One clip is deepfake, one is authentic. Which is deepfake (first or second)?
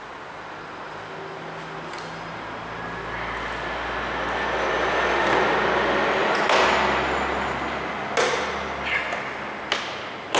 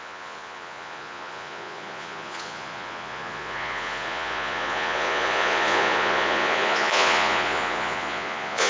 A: second